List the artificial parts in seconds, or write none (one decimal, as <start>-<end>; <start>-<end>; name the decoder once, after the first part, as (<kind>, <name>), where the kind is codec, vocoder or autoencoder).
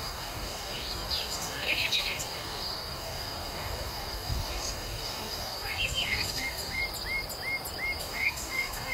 0.0-6.8 (codec, DAC); 8.0-8.9